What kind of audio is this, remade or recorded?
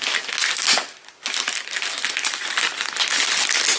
recorded